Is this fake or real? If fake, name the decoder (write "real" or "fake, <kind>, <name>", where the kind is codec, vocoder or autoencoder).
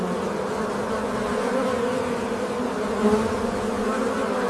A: real